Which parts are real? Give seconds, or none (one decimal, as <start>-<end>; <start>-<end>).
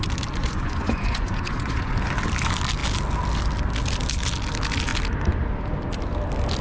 0.0-0.4; 1.9-6.6